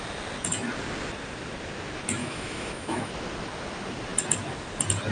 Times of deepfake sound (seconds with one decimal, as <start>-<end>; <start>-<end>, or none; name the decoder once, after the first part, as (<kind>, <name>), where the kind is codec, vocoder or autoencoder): 2.2-3.1 (autoencoder, DAC-VAE)